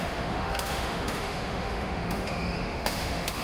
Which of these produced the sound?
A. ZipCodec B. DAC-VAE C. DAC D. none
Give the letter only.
B